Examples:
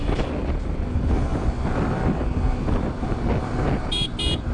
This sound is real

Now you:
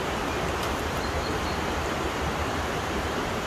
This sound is fake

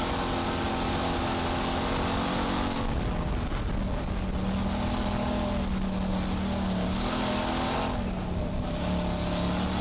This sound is real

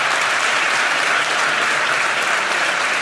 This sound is fake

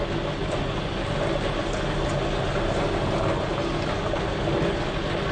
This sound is real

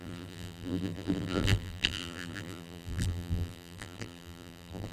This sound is fake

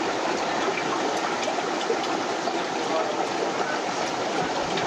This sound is real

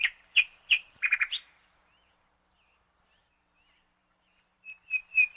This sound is fake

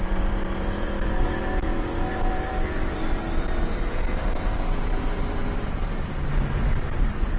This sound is fake